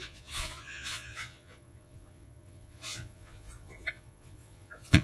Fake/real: fake